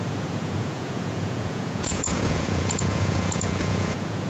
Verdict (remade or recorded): remade